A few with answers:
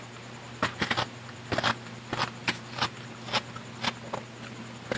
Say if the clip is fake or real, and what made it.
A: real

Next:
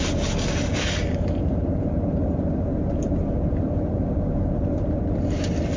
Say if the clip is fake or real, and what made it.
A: real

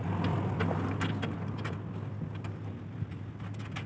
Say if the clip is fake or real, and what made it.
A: real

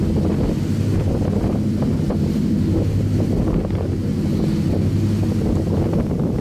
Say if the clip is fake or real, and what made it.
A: real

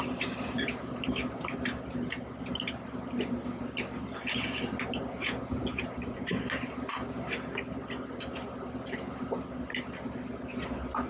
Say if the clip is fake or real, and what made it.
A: real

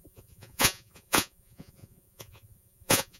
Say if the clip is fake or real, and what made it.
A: fake, vocoder, Vocos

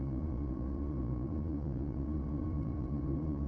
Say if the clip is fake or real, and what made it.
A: fake, vocoder, Vocos